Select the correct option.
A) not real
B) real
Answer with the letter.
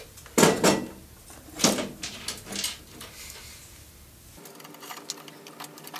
B